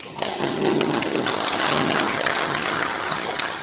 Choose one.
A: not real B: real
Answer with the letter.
A